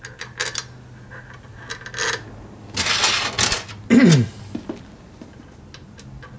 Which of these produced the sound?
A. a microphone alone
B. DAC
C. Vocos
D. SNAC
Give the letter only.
A